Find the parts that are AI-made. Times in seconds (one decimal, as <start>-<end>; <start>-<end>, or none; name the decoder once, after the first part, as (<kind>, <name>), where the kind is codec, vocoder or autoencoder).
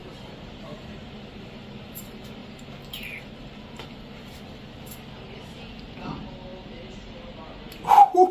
0.0-1.0 (vocoder, BigVGAN v2)